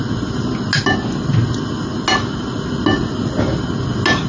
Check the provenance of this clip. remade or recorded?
recorded